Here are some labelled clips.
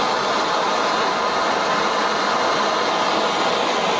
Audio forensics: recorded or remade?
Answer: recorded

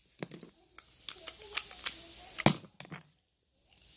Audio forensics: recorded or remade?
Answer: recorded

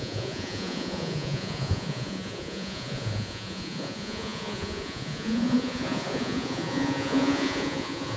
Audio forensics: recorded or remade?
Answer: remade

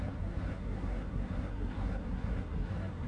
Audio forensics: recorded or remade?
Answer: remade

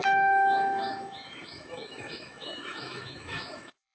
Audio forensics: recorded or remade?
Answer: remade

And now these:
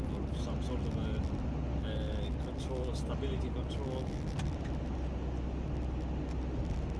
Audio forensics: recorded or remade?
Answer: recorded